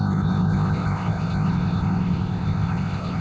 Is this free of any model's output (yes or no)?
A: no